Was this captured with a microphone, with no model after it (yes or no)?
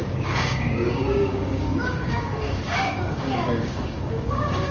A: no